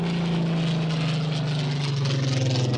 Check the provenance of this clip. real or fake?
real